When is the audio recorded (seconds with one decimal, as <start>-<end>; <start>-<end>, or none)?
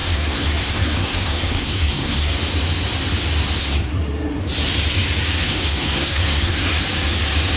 2.3-3.6; 4.4-5.4; 6.8-7.6